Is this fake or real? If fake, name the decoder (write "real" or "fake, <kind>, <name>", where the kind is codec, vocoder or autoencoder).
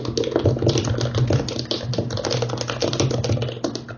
real